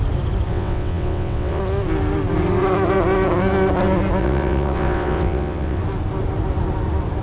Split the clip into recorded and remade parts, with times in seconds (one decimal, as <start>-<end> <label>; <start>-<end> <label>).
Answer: 0.0-0.5 recorded; 0.5-1.6 remade; 1.6-4.2 recorded; 4.2-5.8 remade; 5.8-7.2 recorded